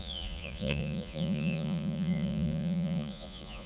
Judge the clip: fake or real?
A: fake